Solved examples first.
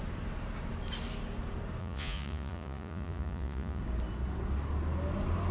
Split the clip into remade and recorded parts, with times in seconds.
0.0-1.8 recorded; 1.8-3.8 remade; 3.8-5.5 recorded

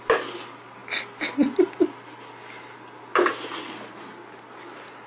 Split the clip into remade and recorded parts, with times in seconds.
0.0-5.1 recorded

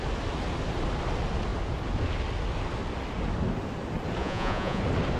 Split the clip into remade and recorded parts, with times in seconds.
0.0-4.2 recorded; 4.2-4.8 remade; 4.8-5.2 recorded

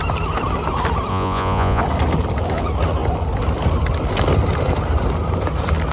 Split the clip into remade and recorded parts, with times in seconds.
0.0-1.1 recorded; 1.1-1.8 remade; 1.8-5.9 recorded

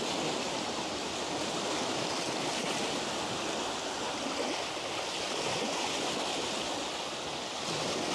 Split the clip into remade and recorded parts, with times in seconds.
0.0-5.5 recorded; 5.5-6.1 remade; 6.1-8.1 recorded